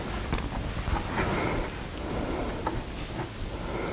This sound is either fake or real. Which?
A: real